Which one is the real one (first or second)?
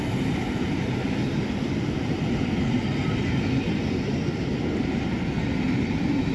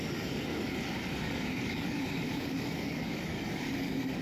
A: first